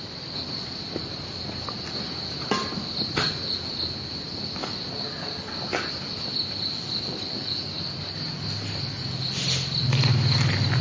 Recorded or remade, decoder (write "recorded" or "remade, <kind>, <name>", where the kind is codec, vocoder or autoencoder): recorded